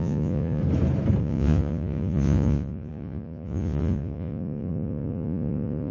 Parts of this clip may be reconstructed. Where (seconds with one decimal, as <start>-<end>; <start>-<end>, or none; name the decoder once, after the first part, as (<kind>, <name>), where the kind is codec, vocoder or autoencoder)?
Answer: 0.0-0.6 (vocoder, Vocos); 1.2-5.9